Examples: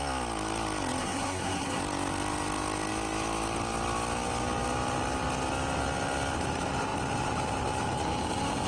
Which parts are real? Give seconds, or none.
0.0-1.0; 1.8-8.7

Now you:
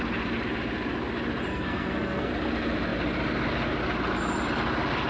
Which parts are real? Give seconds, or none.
0.0-1.5; 2.3-5.1

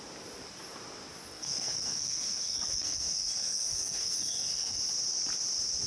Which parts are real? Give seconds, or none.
0.0-1.3; 4.8-5.9